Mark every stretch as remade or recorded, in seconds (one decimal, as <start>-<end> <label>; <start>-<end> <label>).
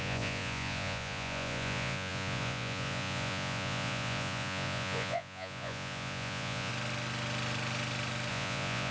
0.0-6.7 remade; 6.7-8.3 recorded; 8.3-8.9 remade